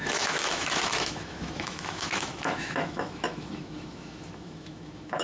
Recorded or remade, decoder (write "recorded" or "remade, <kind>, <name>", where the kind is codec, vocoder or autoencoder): remade, autoencoder, DAC-VAE